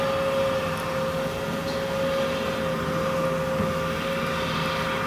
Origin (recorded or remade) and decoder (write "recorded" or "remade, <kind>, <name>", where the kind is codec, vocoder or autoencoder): recorded